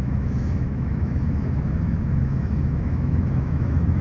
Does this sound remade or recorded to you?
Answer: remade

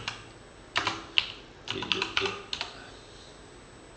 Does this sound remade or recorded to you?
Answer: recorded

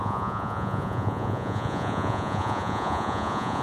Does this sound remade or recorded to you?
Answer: remade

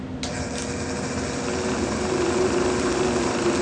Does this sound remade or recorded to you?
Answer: recorded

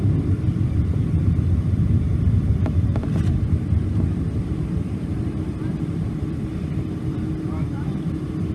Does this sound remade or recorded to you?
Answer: remade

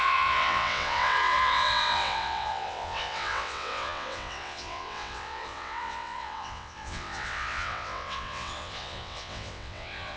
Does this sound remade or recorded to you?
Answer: remade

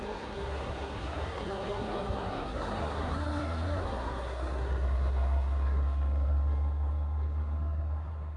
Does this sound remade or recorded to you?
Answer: remade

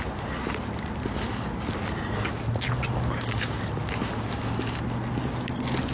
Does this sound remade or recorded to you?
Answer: recorded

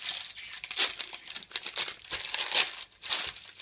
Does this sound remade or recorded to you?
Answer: recorded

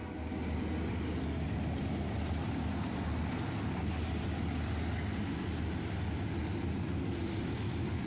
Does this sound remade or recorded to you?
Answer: recorded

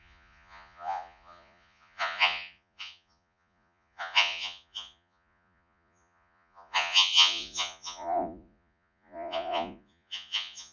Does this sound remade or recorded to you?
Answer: remade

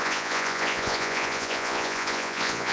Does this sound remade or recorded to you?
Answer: remade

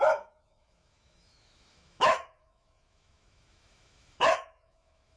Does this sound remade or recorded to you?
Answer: remade